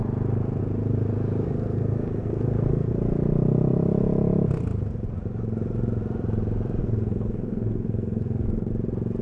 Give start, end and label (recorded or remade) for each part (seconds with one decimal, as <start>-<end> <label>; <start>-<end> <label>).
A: 0.0-1.4 recorded; 1.4-2.9 remade; 2.9-6.8 recorded; 6.8-8.7 remade; 8.7-9.2 recorded